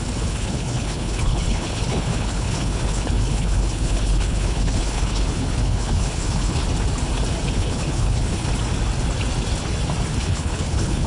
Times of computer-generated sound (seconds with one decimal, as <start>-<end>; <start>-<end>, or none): 0.0-6.6; 7.5-8.5; 10.2-11.1